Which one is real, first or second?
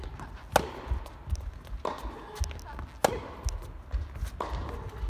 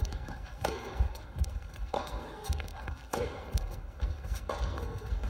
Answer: first